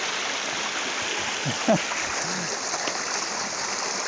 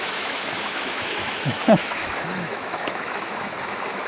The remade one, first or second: second